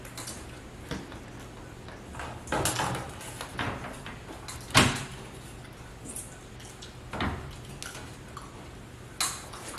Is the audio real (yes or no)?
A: yes